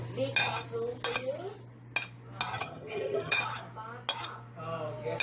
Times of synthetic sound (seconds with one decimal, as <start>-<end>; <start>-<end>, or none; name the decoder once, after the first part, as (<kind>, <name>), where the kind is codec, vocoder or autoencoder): 2.5-3.4 (vocoder, HiFi-GAN)